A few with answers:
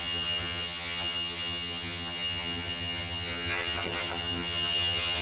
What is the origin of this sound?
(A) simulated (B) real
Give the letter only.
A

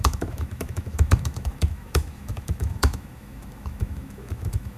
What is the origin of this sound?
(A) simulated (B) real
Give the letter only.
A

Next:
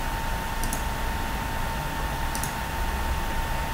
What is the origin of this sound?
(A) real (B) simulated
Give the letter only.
A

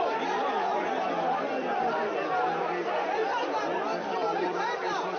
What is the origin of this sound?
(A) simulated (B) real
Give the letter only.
B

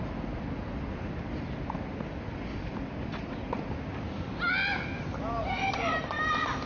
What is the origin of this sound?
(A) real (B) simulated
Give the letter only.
A